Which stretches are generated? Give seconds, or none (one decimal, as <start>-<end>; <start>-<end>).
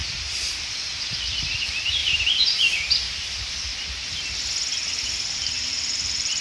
2.0-2.6; 3.7-4.2; 5.4-6.4